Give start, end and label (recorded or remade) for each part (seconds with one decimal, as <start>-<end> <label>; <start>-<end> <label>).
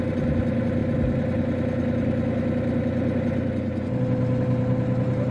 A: 0.0-5.3 recorded